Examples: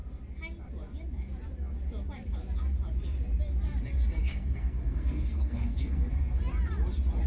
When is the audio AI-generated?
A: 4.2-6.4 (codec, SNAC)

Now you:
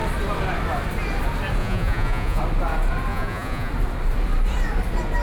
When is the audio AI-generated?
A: 1.6-2.4 (vocoder, Vocos); 3.1-3.7

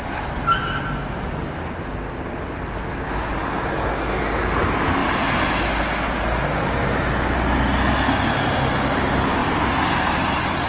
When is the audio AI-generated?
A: none

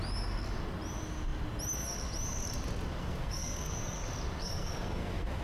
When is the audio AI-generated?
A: 3.0-3.8 (codec, SNAC); 4.4-5.4

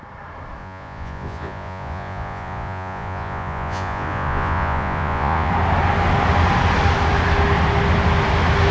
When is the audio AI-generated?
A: 0.6-5.5 (vocoder, Vocos)